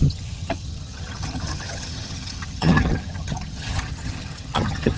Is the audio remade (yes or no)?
yes